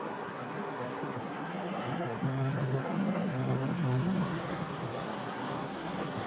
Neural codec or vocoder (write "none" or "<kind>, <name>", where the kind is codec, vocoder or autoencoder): codec, SNAC